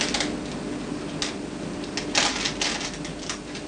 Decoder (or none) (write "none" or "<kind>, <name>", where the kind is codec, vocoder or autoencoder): none